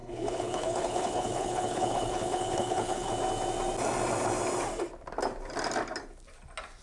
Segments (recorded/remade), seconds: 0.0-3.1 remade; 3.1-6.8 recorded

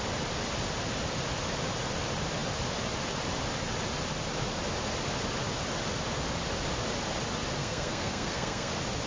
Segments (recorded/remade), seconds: 0.0-7.6 recorded; 7.6-8.7 remade; 8.7-9.1 recorded